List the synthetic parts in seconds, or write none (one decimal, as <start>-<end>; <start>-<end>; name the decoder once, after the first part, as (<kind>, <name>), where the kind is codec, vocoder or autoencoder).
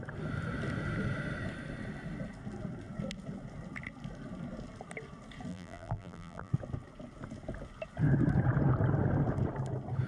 5.5-6.5 (vocoder, BigVGAN v2)